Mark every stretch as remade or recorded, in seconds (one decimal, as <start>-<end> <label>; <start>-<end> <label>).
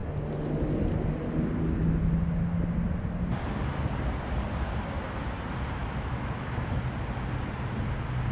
0.0-5.8 recorded; 5.8-6.8 remade; 6.8-8.3 recorded